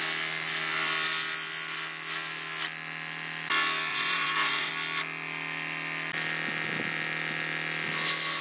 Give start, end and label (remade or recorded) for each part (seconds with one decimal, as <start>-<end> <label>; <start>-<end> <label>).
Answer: 0.0-3.9 recorded; 3.9-4.7 remade; 4.7-8.4 recorded